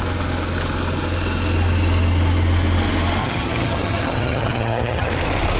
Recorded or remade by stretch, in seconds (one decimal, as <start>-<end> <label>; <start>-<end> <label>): 0.0-3.2 recorded; 3.2-5.1 remade; 5.1-5.6 recorded